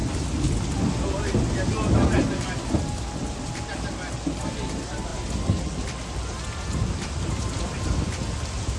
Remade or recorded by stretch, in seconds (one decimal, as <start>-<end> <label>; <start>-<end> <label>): 0.0-1.0 remade; 1.0-8.8 recorded